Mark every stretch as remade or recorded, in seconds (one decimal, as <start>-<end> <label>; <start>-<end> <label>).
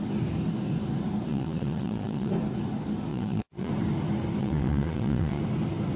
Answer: 0.0-1.3 recorded; 1.3-2.3 remade; 2.3-3.1 recorded; 3.1-3.7 remade; 3.7-4.4 recorded; 4.4-5.4 remade; 5.4-6.0 recorded